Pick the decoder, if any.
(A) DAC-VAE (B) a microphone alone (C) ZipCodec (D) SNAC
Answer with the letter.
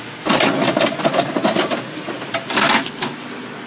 B